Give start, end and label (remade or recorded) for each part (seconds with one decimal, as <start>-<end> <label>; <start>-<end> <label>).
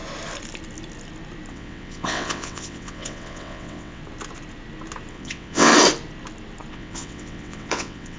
0.0-1.5 recorded; 1.5-4.0 remade; 4.0-5.1 recorded; 5.1-5.7 remade; 5.7-6.7 recorded; 6.7-8.2 remade